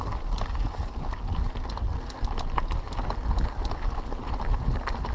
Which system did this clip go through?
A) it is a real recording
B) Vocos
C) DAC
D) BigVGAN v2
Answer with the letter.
A